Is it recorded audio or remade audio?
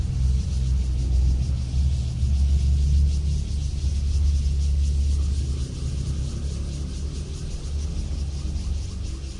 recorded